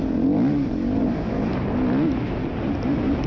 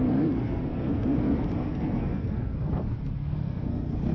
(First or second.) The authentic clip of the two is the first